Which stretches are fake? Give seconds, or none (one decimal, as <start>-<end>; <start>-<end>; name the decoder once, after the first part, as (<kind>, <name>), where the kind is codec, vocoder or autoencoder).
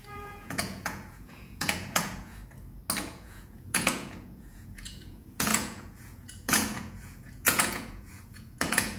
0.0-2.4 (vocoder, Vocos); 3.0-9.0